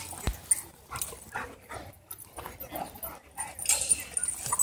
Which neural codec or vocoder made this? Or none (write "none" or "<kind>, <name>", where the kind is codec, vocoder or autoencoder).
none